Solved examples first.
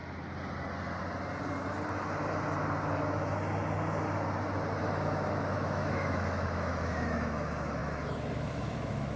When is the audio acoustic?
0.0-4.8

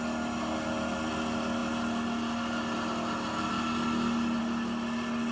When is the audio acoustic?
0.0-5.3

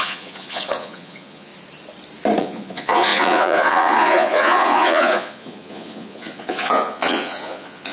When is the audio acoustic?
1.5-2.4

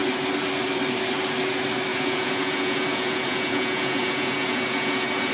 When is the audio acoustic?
0.0-1.9

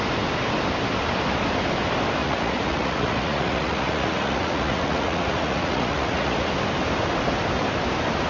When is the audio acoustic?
0.0-2.2; 6.5-8.3